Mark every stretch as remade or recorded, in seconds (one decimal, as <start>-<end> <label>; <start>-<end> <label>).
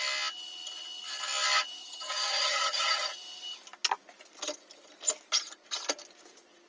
0.0-1.8 recorded; 1.8-3.1 remade; 3.1-6.7 recorded